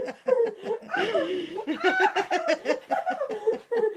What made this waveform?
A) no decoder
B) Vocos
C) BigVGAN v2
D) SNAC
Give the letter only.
A